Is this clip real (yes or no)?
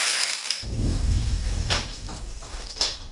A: no